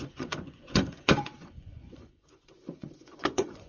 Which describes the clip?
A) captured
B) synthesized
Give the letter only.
B